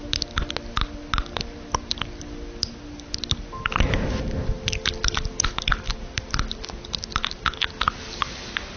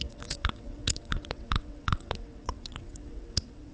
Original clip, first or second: first